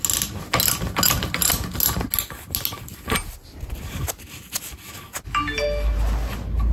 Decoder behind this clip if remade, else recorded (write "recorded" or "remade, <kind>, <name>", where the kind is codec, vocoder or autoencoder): recorded